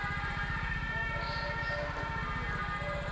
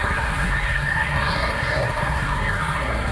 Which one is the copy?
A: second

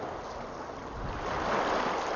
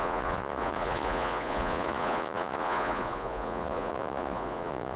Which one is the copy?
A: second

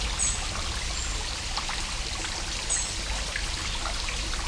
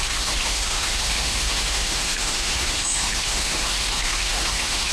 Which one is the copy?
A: second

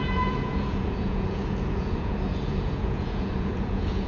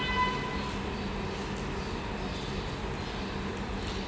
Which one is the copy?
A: first